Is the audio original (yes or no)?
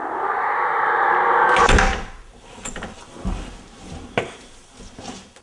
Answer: yes